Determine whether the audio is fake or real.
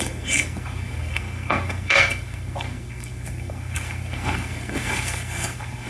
fake